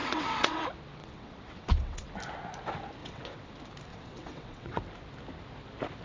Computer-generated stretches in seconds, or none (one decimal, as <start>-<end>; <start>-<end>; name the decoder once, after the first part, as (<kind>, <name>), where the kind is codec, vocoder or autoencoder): 0.0-0.6 (vocoder, WaveNeXt); 1.0-2.1; 3.0-3.5; 3.9-4.8